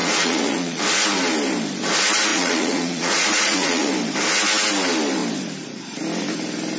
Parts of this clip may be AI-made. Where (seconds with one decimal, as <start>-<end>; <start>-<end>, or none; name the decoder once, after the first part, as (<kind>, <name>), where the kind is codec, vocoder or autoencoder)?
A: 0.0-0.8 (vocoder, Vocos); 2.3-3.9